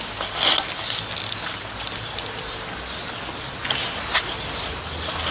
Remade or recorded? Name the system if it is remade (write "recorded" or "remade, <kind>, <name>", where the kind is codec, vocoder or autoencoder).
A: recorded